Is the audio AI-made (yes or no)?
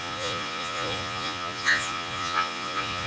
yes